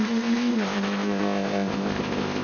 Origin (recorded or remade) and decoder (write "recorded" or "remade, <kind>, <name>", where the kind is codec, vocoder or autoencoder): remade, codec, ZipCodec